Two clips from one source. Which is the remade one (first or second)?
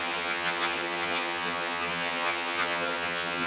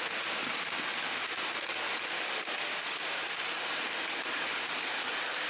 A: first